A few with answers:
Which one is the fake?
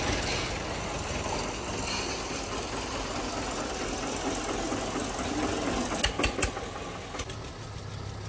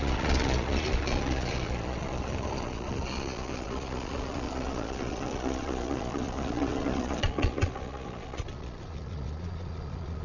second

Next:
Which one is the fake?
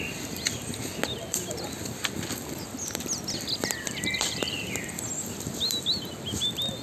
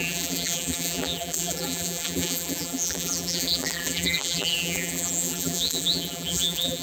second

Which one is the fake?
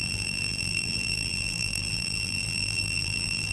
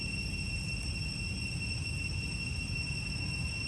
first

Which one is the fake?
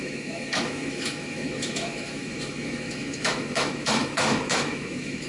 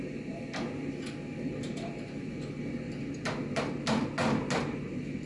first